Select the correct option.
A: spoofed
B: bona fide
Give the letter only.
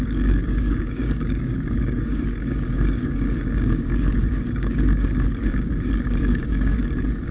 A